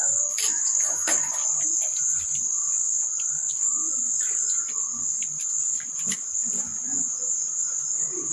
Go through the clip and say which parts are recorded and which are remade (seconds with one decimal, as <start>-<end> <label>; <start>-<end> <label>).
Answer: 0.0-1.4 remade; 1.4-3.3 recorded; 3.3-3.8 remade; 3.8-8.3 recorded